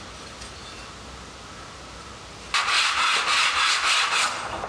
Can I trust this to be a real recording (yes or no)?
yes